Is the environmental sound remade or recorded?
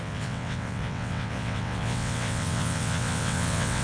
remade